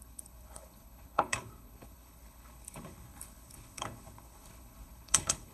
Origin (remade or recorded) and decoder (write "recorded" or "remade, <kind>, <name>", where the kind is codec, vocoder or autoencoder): remade, codec, HILCodec